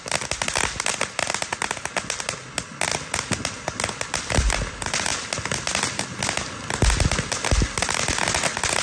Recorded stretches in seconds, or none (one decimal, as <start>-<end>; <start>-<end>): 0.0-8.8